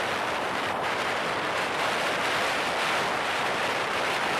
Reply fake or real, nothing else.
real